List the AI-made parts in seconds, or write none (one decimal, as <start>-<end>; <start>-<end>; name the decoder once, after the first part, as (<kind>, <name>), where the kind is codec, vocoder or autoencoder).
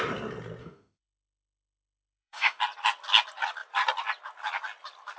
0.6-2.6 (autoencoder, DAC-VAE)